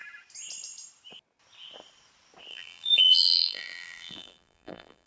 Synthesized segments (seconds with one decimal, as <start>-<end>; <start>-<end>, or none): 2.5-5.1